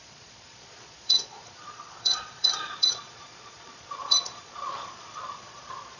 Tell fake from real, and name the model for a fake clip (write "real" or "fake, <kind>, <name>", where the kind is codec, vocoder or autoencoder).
fake, vocoder, Vocos